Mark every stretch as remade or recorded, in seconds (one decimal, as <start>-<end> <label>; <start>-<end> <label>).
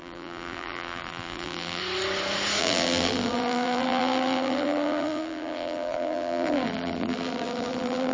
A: 0.0-1.8 remade; 1.8-2.6 recorded; 2.6-8.1 remade